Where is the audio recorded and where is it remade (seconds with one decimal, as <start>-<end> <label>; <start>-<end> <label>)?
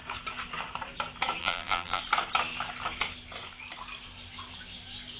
0.0-1.4 recorded; 1.4-2.0 remade; 2.0-5.2 recorded